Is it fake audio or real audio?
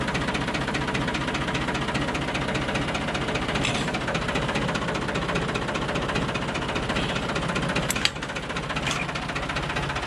real